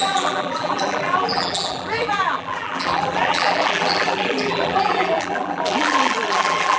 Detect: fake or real fake